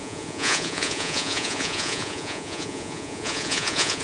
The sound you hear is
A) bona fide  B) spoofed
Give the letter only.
B